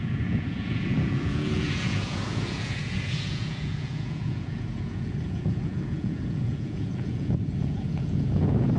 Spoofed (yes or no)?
yes